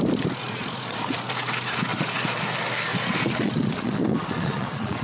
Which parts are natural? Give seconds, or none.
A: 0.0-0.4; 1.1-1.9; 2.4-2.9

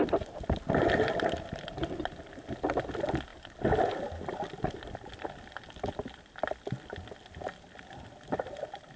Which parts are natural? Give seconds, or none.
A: 0.0-9.0

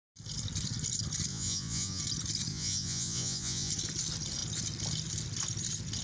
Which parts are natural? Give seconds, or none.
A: 0.0-1.3; 2.0-2.5; 3.7-6.0

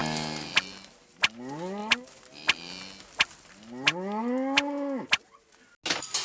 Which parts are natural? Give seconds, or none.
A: 0.0-6.2

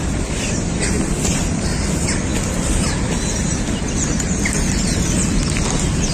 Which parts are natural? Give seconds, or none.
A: 0.0-6.1